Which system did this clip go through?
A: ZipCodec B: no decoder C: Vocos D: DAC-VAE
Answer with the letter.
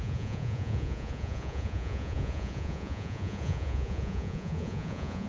C